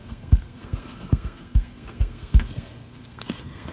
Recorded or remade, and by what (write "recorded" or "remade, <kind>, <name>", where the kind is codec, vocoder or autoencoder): remade, codec, SNAC